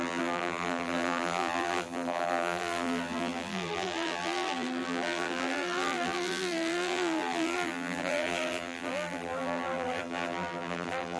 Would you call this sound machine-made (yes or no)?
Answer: yes